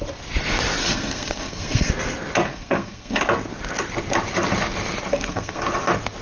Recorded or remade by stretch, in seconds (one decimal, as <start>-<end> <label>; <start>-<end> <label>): 0.0-0.8 recorded; 0.8-1.9 remade; 1.9-2.5 recorded; 2.5-3.2 remade; 3.2-5.1 recorded; 5.1-5.6 remade; 5.6-6.2 recorded